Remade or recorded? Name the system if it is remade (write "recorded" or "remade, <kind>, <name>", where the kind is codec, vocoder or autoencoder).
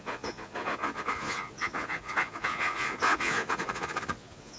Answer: remade, vocoder, Vocos